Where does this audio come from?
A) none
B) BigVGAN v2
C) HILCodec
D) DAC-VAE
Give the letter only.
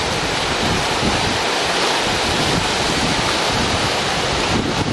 A